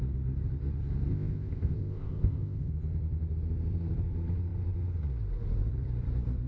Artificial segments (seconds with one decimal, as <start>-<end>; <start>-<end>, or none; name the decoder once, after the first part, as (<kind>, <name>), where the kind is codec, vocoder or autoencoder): 1.1-2.7 (codec, ZipCodec)